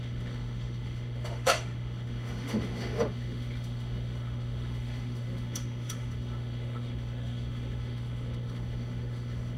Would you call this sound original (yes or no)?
no